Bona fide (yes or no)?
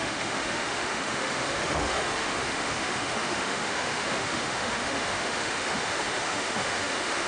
no